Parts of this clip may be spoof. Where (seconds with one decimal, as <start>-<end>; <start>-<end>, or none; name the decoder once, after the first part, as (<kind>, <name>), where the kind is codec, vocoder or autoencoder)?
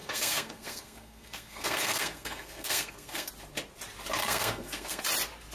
0.0-3.3 (codec, SNAC); 4.2-5.0